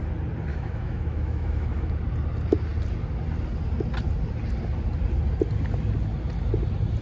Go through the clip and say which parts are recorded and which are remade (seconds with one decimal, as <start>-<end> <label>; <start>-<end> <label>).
0.0-0.5 recorded; 0.5-1.9 remade; 1.9-7.0 recorded